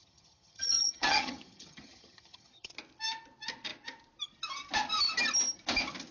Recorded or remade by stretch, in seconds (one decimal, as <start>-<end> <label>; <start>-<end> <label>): 0.0-2.7 remade; 2.7-6.1 recorded

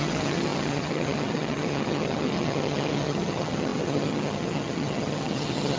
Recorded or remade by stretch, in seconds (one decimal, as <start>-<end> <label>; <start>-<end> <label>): 0.0-5.8 remade

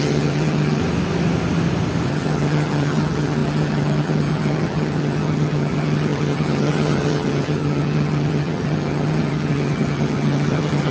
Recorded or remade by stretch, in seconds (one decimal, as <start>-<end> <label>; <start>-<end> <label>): 0.0-0.8 remade; 0.8-2.1 recorded; 2.1-10.9 remade